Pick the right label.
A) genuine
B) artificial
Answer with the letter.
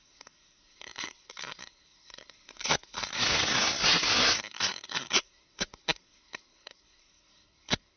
B